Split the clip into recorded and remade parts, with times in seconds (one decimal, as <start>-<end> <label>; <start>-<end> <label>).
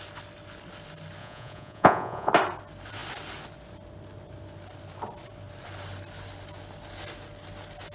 0.0-1.2 recorded; 1.2-2.3 remade; 2.3-7.9 recorded